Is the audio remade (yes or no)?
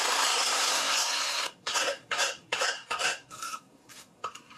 yes